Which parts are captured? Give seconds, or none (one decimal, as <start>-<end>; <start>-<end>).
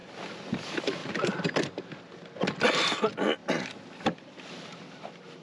0.0-5.4